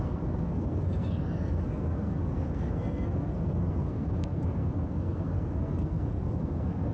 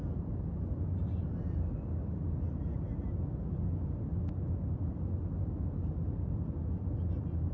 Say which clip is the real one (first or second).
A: second